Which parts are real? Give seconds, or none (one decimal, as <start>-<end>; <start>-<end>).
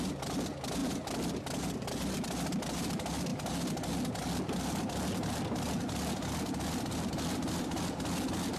0.0-8.6